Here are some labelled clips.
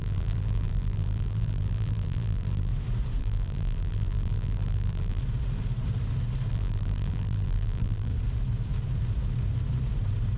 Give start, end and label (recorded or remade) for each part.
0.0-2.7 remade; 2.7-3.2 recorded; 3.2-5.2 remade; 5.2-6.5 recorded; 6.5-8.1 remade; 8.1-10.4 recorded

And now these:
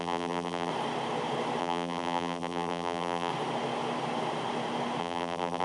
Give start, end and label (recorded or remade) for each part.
0.0-0.7 remade; 0.7-1.6 recorded; 1.6-3.3 remade; 3.3-5.0 recorded; 5.0-5.6 remade

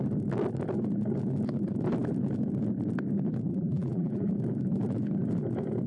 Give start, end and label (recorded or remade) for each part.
0.0-3.5 recorded; 3.5-4.3 remade; 4.3-5.9 recorded

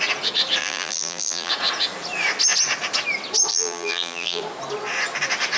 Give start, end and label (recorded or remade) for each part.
0.0-0.6 recorded; 0.6-1.5 remade; 1.5-3.5 recorded; 3.5-4.4 remade; 4.4-5.6 recorded